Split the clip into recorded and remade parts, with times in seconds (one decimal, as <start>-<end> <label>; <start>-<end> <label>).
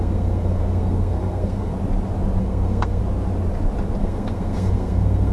0.0-1.7 remade; 1.7-2.4 recorded; 2.4-3.0 remade; 3.0-4.0 recorded; 4.0-5.3 remade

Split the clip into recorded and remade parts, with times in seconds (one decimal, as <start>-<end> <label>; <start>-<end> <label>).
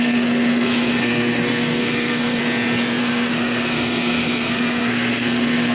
0.0-2.4 remade; 2.4-3.0 recorded; 3.0-5.7 remade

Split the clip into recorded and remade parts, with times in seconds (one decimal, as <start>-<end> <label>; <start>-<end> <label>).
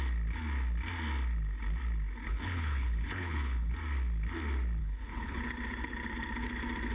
0.0-2.2 recorded; 2.2-3.7 remade; 3.7-4.8 recorded; 4.8-5.4 remade; 5.4-6.9 recorded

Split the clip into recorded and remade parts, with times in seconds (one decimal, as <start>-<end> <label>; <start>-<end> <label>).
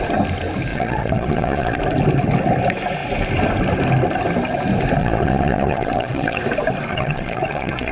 0.0-0.7 recorded; 0.7-1.8 remade; 1.8-5.0 recorded; 5.0-6.4 remade; 6.4-6.9 recorded; 6.9-7.9 remade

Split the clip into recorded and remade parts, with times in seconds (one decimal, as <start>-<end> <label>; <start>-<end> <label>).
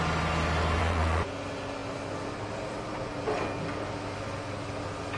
0.0-0.8 recorded; 0.8-1.3 remade; 1.3-5.2 recorded